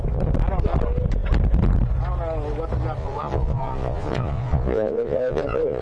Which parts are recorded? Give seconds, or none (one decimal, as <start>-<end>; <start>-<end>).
0.0-3.0